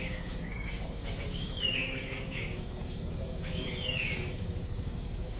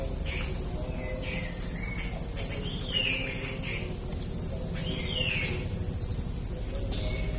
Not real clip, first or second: first